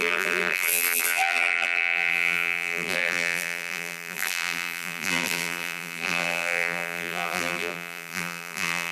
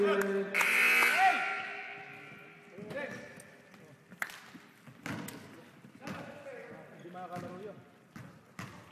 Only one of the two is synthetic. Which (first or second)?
first